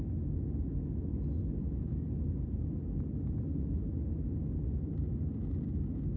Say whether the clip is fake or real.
real